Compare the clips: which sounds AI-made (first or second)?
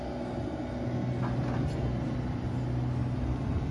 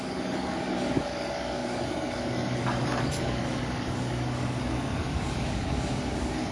second